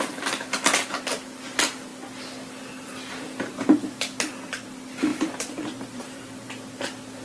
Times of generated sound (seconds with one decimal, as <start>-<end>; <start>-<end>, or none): 5.1-6.5